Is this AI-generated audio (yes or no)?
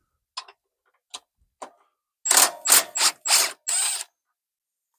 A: no